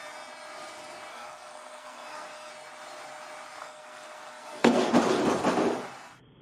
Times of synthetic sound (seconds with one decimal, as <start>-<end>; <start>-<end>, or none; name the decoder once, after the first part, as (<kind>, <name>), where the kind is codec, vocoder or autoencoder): 1.1-2.5 (codec, SNAC); 3.6-4.9